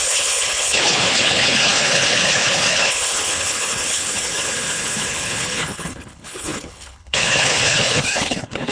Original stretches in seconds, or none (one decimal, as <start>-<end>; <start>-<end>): none